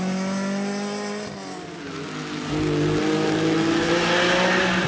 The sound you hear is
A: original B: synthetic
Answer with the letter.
A